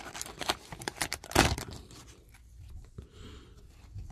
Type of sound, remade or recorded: remade